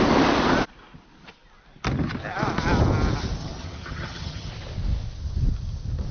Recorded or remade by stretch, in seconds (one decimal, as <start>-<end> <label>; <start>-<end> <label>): 0.0-3.4 recorded; 3.4-4.5 remade; 4.5-6.1 recorded